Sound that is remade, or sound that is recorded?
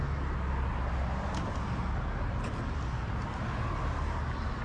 recorded